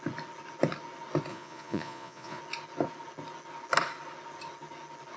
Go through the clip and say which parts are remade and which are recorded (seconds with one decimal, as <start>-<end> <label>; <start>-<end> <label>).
0.0-1.3 recorded; 1.3-2.4 remade; 2.4-5.2 recorded